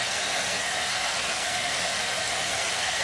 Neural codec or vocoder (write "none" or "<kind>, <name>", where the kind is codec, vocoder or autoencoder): codec, SNAC